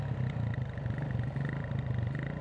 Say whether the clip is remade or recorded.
recorded